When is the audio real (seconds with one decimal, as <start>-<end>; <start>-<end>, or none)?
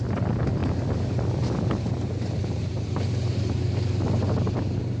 0.0-0.6; 3.6-5.0